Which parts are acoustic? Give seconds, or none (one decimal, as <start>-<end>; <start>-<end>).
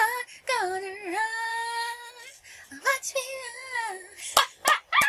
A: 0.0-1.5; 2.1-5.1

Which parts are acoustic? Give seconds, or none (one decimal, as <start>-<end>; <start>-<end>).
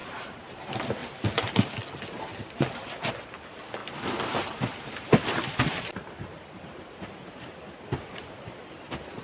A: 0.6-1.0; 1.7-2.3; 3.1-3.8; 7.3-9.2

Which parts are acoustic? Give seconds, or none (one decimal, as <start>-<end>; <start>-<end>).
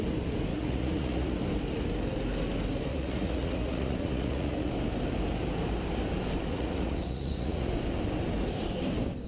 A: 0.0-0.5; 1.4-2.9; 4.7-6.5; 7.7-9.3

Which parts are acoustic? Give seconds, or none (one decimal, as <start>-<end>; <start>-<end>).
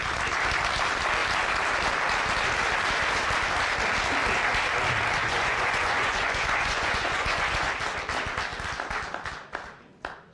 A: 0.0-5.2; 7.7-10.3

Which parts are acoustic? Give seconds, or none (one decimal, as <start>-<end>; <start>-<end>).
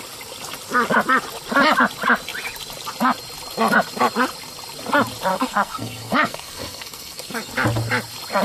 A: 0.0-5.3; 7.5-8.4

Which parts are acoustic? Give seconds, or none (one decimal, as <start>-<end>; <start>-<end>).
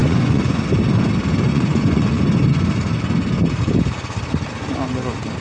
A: 0.6-1.5; 2.2-5.4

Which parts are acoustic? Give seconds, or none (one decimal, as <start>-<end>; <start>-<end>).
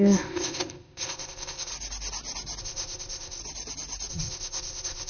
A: 1.7-2.6; 3.4-4.1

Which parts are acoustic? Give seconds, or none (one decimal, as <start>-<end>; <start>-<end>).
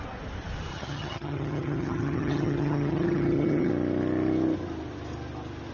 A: 0.0-0.7; 3.7-5.7